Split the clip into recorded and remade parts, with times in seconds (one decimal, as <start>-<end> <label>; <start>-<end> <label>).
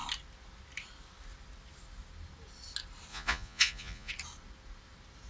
0.0-3.1 recorded; 3.1-4.1 remade; 4.1-5.3 recorded